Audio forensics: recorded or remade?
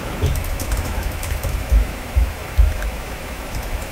remade